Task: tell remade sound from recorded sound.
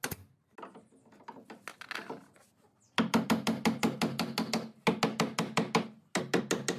recorded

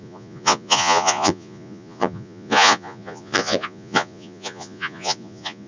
remade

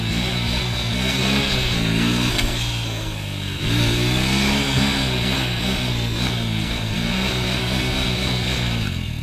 remade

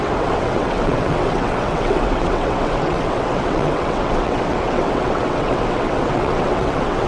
remade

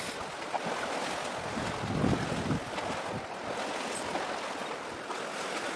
recorded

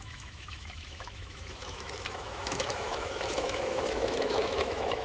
remade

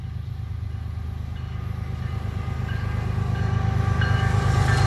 recorded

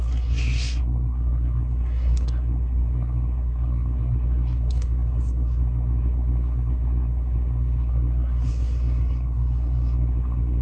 remade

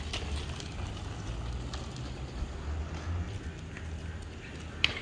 recorded